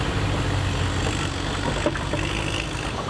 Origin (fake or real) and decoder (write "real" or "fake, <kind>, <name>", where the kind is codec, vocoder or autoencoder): real